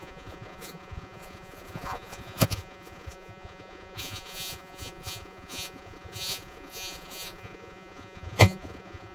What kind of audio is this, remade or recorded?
remade